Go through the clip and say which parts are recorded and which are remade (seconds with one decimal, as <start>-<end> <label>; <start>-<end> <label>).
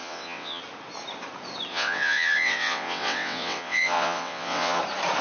0.0-0.6 remade; 0.6-1.7 recorded; 1.7-4.8 remade; 4.8-5.2 recorded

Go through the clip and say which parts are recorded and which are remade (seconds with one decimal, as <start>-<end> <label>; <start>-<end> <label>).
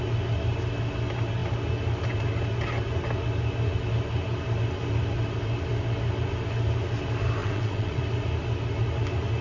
0.0-7.4 recorded; 7.4-8.0 remade; 8.0-9.4 recorded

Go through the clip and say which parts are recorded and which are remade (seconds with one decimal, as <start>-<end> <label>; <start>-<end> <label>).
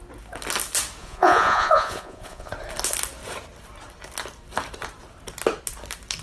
0.0-1.0 recorded; 1.0-2.5 remade; 2.5-6.2 recorded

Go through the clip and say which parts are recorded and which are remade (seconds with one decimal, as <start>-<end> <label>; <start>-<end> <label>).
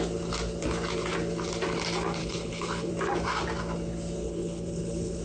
0.0-2.2 recorded; 2.2-2.9 remade; 2.9-4.2 recorded; 4.2-5.2 remade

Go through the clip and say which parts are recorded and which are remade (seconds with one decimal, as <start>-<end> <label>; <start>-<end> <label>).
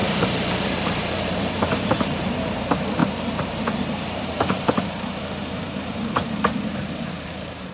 0.0-2.3 remade; 2.3-3.0 recorded; 3.0-7.7 remade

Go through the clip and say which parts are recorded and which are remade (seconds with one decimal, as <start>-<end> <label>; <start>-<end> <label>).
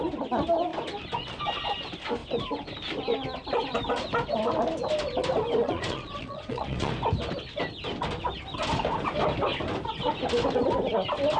0.0-5.6 recorded; 5.6-6.9 remade; 6.9-11.4 recorded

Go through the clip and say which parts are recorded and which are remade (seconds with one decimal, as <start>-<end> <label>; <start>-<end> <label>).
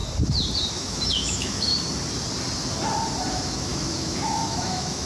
0.0-0.7 recorded; 0.7-1.7 remade; 1.7-3.3 recorded; 3.3-5.1 remade